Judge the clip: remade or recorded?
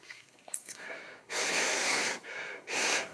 remade